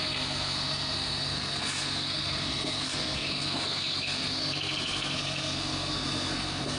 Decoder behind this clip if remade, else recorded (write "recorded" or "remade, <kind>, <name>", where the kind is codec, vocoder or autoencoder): remade, codec, SNAC